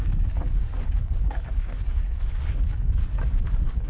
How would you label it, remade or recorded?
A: remade